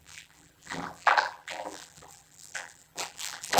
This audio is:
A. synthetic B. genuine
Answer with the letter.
A